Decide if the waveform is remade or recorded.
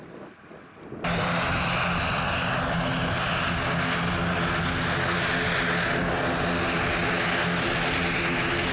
recorded